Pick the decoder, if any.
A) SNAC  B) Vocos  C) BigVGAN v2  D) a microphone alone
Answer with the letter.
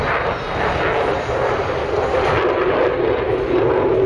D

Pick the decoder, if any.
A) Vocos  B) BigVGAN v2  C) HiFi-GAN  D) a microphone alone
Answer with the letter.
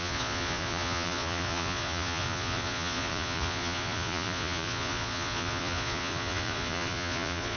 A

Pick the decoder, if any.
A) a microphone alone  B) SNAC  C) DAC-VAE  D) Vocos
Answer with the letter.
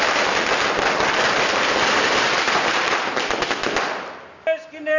A